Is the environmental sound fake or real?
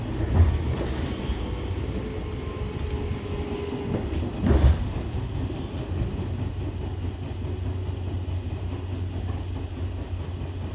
real